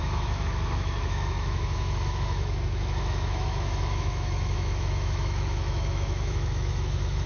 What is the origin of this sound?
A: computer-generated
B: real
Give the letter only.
A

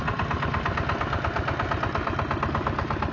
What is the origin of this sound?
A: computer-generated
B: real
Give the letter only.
B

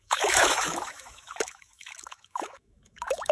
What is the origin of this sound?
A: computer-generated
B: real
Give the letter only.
A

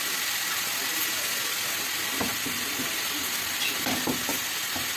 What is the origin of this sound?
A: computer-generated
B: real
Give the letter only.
B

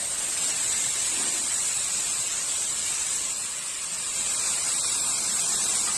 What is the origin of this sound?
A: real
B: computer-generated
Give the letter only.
A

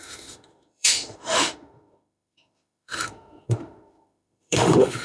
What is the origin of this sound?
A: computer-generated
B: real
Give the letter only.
A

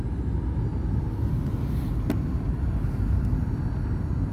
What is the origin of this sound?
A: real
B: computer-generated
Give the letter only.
A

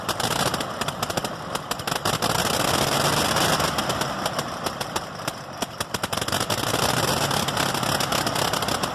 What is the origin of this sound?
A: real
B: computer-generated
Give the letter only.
A